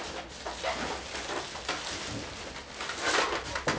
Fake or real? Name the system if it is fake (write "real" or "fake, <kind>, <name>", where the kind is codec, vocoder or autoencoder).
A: real